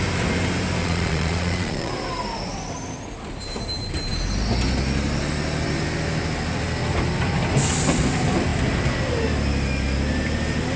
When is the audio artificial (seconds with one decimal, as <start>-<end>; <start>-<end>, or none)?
0.8-1.9